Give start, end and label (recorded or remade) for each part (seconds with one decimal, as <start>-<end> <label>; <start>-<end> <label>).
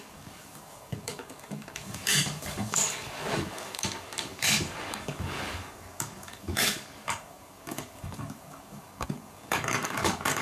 0.0-10.4 remade